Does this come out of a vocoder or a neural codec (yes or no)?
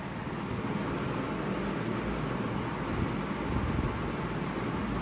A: no